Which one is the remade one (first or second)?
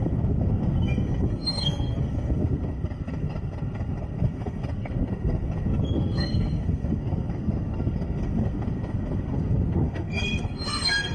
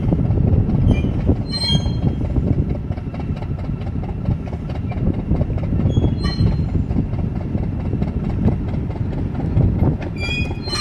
first